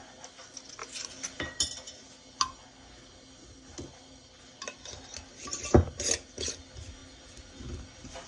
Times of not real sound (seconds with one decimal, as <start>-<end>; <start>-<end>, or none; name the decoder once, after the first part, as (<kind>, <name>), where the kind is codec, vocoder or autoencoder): none